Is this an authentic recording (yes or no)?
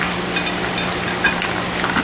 yes